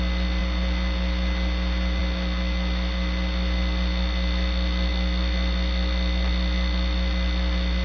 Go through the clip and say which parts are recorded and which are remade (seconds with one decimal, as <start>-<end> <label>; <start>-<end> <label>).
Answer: 0.0-7.8 recorded